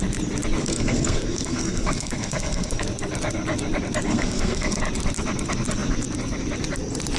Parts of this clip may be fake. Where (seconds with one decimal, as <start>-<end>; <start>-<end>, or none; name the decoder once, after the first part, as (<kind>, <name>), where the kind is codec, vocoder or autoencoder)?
0.6-2.8 (codec, SNAC); 4.1-4.8

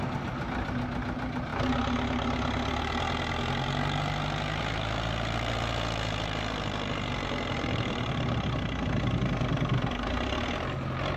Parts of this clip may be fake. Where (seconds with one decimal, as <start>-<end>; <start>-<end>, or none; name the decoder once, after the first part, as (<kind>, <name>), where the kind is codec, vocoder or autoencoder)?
none

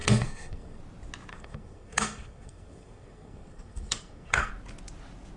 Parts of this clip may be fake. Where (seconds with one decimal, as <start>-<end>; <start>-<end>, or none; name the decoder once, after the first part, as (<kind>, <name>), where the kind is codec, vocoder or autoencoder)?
0.0-0.8 (codec, SNAC); 1.3-4.5

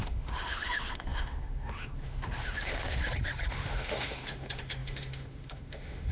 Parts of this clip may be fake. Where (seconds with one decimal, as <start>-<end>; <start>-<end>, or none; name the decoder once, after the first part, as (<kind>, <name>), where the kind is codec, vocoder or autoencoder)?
0.0-3.0 (autoencoder, DAC-VAE); 3.5-6.1